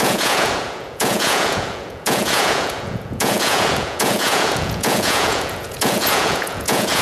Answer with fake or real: fake